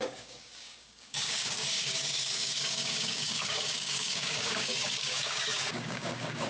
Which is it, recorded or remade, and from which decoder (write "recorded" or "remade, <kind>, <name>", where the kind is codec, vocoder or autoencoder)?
remade, codec, DAC